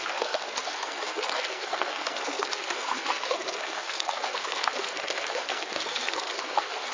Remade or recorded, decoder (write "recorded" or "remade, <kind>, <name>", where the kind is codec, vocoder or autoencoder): remade, codec, SNAC